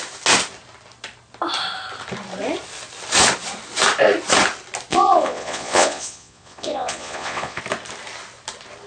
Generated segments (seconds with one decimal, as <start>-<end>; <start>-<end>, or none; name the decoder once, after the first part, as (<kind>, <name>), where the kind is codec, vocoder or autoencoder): 4.9-7.6 (vocoder, Vocos)